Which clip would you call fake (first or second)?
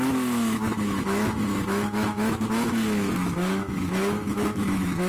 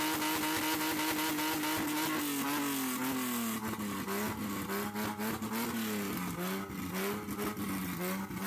first